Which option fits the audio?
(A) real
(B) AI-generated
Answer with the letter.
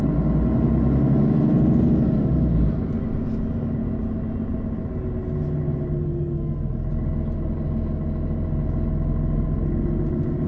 A